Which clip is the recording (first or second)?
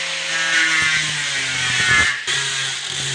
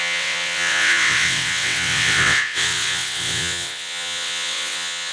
first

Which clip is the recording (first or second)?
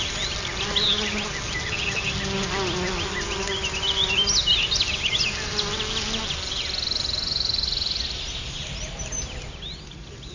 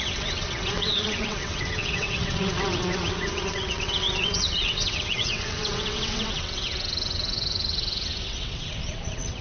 first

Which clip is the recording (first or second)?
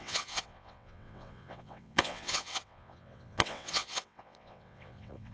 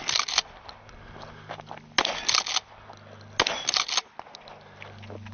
second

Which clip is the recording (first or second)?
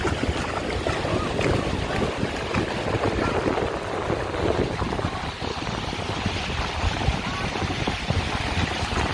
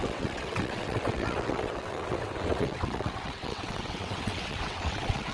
first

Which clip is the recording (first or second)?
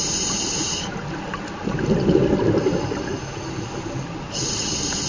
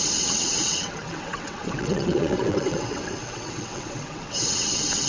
first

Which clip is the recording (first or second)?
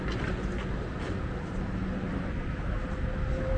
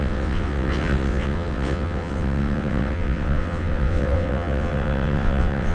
first